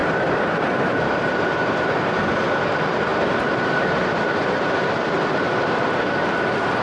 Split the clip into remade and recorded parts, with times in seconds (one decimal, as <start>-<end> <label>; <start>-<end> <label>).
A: 0.0-2.1 remade; 2.1-3.1 recorded; 3.1-6.0 remade; 6.0-6.8 recorded